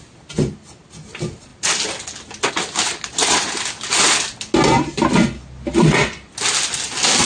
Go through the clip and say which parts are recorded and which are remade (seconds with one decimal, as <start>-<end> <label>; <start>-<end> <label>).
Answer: 0.0-7.2 recorded